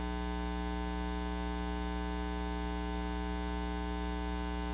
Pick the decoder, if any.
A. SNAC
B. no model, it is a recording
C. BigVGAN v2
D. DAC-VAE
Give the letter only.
B